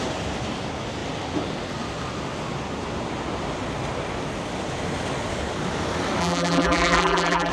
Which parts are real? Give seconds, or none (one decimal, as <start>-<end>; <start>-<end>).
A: 0.0-6.2